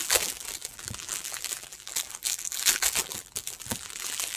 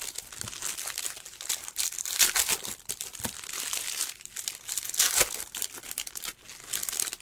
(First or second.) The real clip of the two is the second